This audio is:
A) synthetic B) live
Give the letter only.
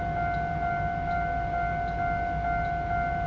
B